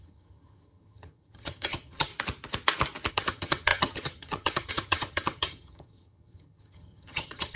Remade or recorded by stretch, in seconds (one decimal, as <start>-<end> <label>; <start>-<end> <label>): 0.0-2.1 remade; 2.1-3.1 recorded; 3.1-7.6 remade